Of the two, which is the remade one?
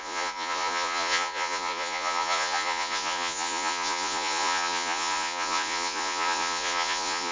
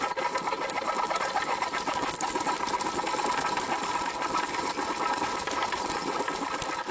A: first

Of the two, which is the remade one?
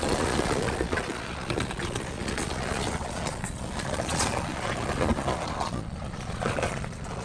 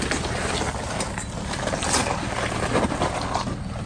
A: first